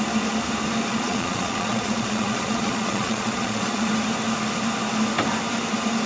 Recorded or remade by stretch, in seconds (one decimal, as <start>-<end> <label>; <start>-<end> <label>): 0.0-0.9 recorded; 0.9-3.9 remade; 3.9-6.1 recorded